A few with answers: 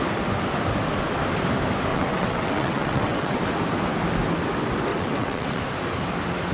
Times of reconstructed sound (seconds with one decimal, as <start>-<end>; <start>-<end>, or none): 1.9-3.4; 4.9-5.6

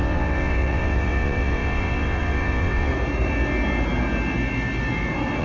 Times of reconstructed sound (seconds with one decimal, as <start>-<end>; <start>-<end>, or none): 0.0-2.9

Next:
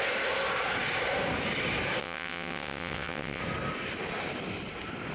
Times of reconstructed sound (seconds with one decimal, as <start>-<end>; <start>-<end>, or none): 2.0-3.4